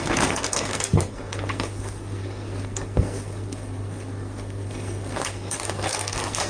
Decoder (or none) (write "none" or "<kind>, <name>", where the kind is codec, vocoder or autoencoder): codec, SNAC